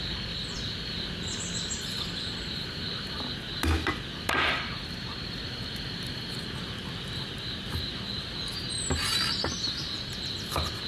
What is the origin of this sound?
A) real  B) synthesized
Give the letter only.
A